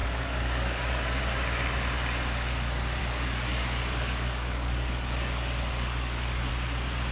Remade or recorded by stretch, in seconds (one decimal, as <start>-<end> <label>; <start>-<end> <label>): 0.0-1.2 remade; 1.2-3.0 recorded; 3.0-6.5 remade; 6.5-7.1 recorded